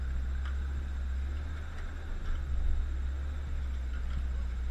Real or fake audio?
real